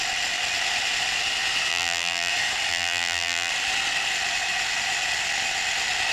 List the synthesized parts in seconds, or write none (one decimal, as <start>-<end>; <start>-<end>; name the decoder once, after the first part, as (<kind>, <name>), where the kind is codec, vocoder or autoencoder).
1.7-2.3 (vocoder, BigVGAN v2); 2.7-3.5